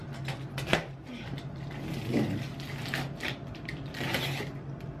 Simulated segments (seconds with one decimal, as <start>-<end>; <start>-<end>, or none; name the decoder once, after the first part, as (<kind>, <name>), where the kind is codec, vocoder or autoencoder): none